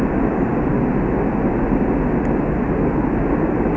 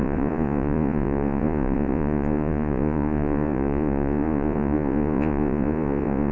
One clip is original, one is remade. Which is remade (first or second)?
second